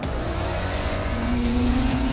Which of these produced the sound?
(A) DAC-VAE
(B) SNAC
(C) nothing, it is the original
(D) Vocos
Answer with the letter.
D